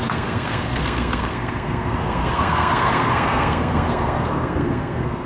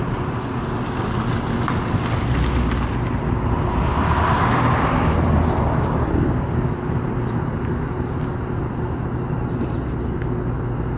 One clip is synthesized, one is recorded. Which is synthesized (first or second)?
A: first